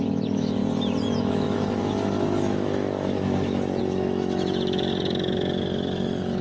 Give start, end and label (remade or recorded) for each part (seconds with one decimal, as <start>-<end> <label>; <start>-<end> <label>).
0.0-0.6 remade; 0.6-1.2 recorded; 1.2-6.4 remade